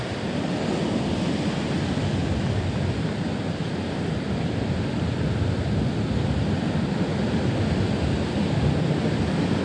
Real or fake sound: real